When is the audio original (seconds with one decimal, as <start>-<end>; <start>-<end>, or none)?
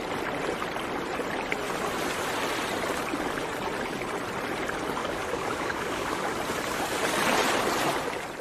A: 0.0-5.0; 6.3-8.4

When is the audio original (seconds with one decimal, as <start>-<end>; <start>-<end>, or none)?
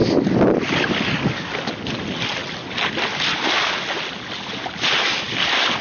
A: 0.0-5.8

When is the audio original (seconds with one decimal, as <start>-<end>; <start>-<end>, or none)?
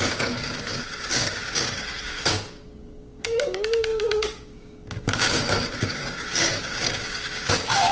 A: none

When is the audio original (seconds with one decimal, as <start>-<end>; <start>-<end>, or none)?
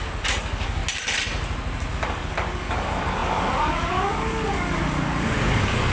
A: 0.8-1.9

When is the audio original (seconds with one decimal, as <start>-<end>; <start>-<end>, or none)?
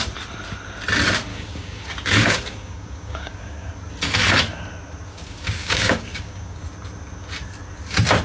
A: 0.0-1.3; 3.7-5.1; 6.6-8.2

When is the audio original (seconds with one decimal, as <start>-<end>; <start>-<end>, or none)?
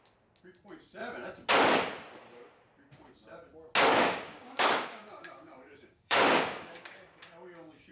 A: 0.0-3.9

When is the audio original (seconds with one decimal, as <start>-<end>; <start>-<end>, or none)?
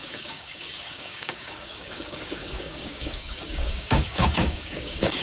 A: none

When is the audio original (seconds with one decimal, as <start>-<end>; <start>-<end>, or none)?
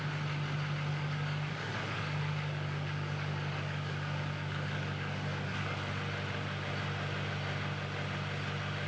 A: 0.0-0.9; 5.9-8.9